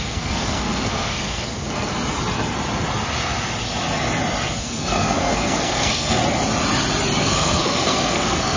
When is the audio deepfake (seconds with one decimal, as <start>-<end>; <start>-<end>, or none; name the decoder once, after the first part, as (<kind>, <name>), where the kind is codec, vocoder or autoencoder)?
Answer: 0.0-1.9 (codec, SNAC); 4.6-6.2; 7.2-8.6